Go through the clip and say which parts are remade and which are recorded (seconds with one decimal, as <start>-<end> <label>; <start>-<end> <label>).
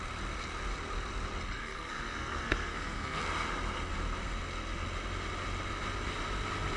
0.0-1.6 recorded; 1.6-3.2 remade; 3.2-6.8 recorded